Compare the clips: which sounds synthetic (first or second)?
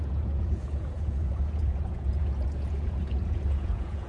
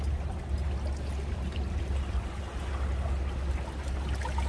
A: first